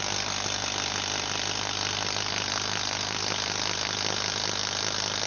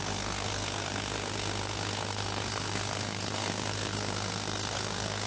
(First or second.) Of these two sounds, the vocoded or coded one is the second